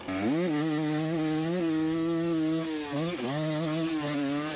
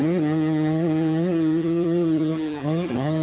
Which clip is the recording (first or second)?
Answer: first